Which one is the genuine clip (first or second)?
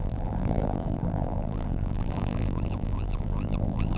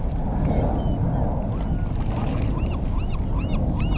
second